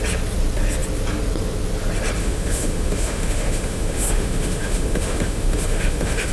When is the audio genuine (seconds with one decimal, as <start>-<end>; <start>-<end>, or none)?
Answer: 0.0-2.2